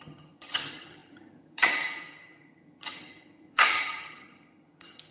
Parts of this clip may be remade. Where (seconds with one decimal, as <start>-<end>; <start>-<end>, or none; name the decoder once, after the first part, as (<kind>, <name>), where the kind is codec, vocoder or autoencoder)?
0.0-5.1 (vocoder, HiFi-GAN)